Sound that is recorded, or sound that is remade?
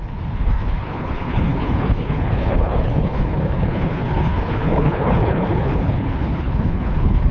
remade